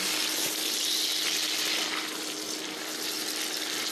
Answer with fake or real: real